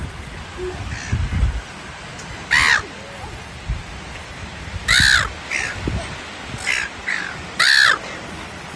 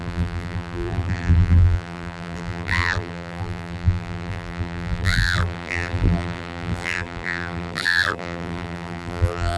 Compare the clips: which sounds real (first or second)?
first